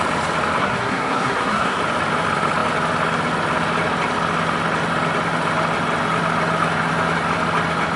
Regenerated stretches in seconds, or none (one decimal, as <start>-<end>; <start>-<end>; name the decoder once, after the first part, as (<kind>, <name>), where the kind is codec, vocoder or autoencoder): 0.6-1.8 (codec, SNAC)